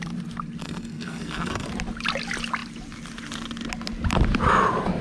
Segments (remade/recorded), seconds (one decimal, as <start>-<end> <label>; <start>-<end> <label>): 0.0-0.6 recorded; 0.6-1.7 remade; 1.7-5.0 recorded